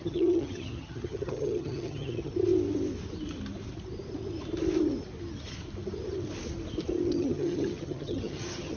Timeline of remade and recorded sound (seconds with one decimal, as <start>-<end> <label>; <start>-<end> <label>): 0.0-2.3 remade; 2.3-7.1 recorded; 7.1-8.8 remade